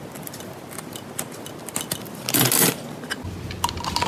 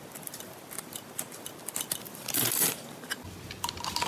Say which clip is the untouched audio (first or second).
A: first